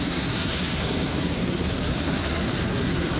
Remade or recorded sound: remade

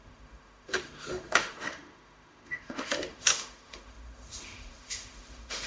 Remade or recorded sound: remade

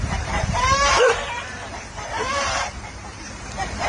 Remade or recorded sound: remade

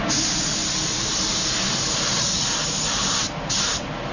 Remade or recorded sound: recorded